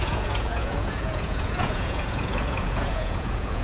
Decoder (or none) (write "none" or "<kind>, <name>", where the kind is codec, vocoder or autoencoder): vocoder, Vocos